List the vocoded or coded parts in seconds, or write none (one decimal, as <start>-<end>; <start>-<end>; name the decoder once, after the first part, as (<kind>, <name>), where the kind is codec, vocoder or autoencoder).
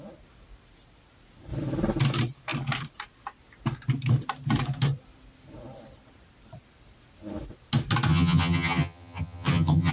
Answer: 8.1-9.9 (vocoder, HiFi-GAN)